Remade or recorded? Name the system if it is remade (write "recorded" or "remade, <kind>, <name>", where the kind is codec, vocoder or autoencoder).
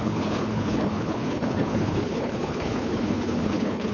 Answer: remade, codec, HILCodec